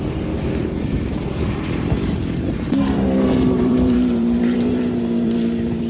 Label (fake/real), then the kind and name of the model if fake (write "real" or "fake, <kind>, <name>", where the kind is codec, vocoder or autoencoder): fake, vocoder, BigVGAN v2